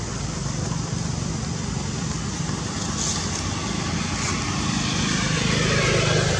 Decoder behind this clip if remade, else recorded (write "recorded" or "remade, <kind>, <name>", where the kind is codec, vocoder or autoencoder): recorded